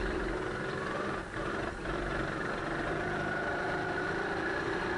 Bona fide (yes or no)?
no